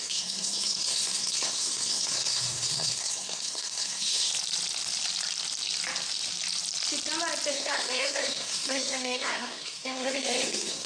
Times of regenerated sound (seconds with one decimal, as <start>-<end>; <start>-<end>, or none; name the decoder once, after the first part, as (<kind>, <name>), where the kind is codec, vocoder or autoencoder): 0.0-4.3 (codec, SNAC); 7.5-10.9